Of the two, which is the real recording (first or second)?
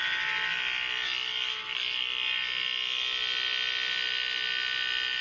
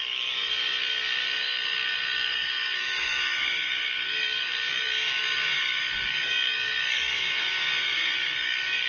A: first